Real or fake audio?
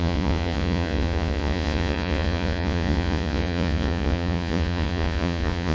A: fake